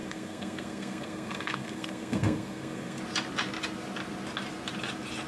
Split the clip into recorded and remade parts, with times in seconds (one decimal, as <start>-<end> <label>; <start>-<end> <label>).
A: 0.0-3.0 remade; 3.0-5.3 recorded